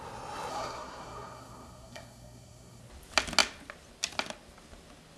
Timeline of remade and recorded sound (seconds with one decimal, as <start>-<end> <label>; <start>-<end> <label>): 0.0-0.5 recorded; 0.5-2.8 remade; 2.8-5.2 recorded